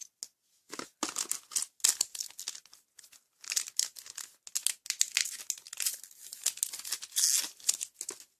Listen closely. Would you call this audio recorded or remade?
recorded